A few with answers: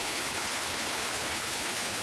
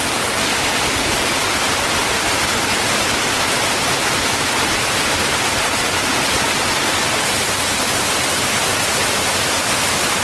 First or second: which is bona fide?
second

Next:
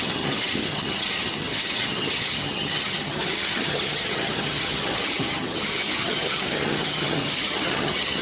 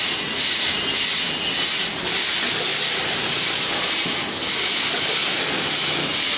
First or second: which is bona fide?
second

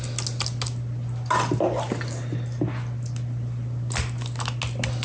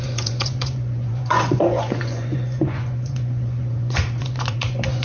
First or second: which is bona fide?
first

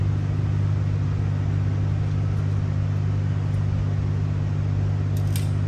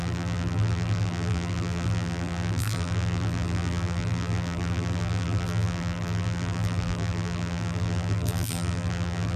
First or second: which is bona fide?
first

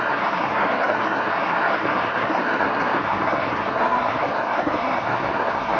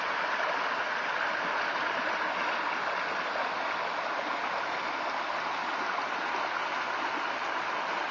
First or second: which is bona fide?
second